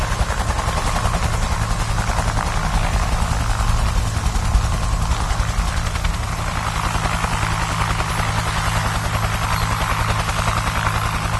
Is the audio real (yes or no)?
yes